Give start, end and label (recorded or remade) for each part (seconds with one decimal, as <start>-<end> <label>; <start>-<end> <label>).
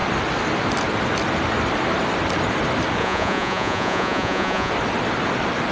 0.0-3.0 recorded; 3.0-4.7 remade; 4.7-5.7 recorded